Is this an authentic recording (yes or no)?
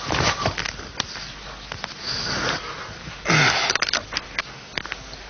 yes